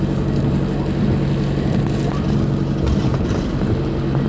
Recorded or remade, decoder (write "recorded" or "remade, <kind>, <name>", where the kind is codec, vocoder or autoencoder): recorded